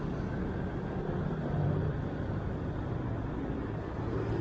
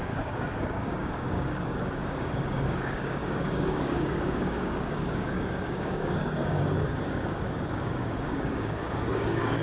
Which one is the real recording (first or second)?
first